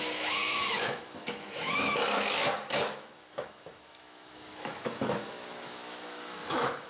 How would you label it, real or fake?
fake